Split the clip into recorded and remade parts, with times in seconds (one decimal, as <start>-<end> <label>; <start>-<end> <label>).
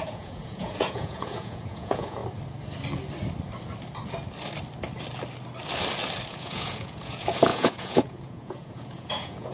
0.0-2.2 remade; 2.2-6.3 recorded; 6.3-9.5 remade